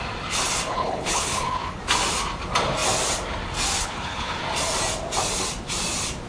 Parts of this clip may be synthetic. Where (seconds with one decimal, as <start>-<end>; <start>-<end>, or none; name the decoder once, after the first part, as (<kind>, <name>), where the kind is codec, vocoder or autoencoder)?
0.7-1.8 (codec, HILCodec); 3.8-4.4